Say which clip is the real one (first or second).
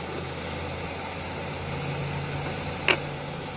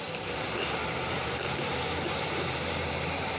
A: first